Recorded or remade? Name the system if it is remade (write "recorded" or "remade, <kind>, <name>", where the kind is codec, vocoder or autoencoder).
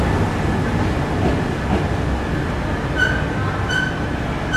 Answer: recorded